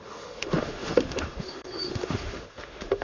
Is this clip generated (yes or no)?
yes